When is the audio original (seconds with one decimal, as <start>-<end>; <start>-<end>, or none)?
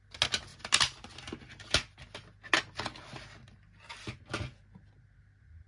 0.0-5.7